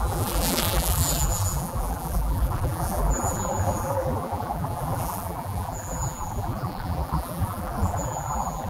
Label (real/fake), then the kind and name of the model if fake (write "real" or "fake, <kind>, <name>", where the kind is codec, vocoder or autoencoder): fake, vocoder, BigVGAN v2